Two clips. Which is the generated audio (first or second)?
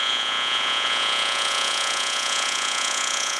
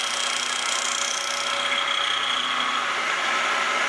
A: first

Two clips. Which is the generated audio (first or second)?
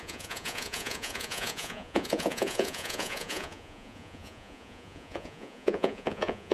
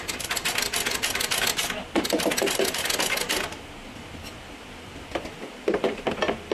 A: first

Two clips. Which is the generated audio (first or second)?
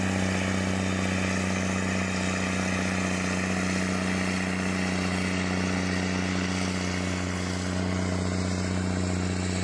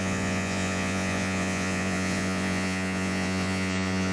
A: second